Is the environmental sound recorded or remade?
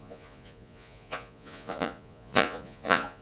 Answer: remade